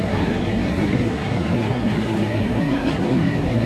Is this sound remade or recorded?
remade